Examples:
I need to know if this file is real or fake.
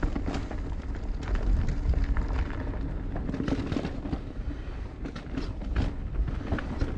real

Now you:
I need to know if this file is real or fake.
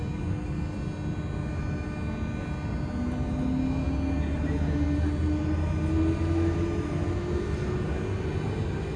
real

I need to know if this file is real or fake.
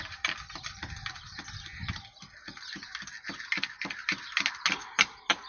real